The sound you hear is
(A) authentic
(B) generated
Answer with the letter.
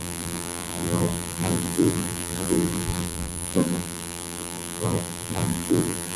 B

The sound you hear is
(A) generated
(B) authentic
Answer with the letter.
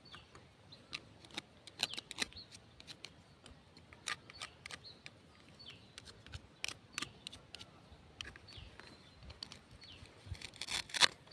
B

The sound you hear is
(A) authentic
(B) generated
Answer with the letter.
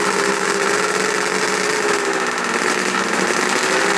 A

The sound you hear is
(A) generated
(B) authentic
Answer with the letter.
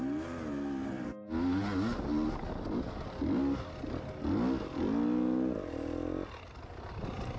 B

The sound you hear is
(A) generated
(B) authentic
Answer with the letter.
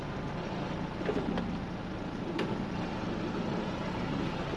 B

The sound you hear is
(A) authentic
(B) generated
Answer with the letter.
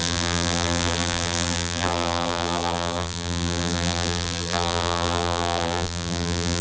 B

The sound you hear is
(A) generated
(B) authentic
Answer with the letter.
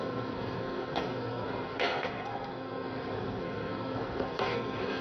A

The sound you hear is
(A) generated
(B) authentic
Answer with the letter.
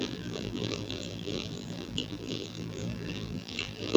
A